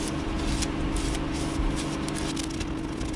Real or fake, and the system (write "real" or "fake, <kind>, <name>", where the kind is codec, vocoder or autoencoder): real